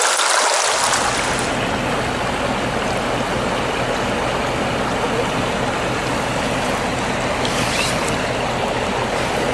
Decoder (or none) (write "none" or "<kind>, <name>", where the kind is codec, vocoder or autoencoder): none